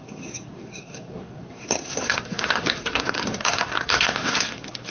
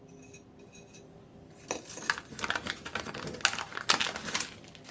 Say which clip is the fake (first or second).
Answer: first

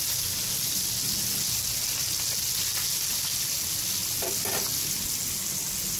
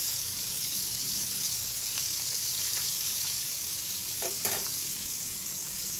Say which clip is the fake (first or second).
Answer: second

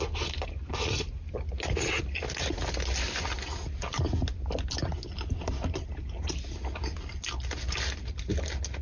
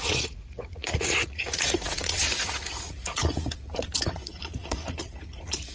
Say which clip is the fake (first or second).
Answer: second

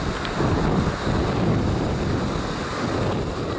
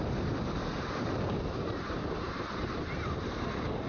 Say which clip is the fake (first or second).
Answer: second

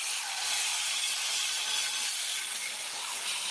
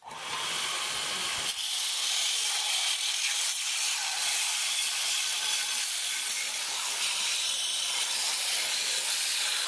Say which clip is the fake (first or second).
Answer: second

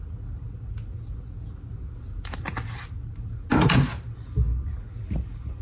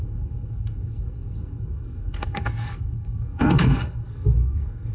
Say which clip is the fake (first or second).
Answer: second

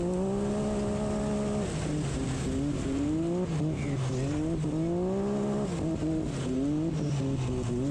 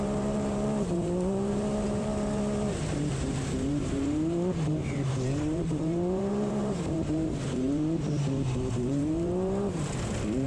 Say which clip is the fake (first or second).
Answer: second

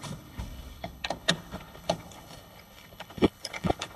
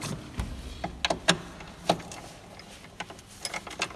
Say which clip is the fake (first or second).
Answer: first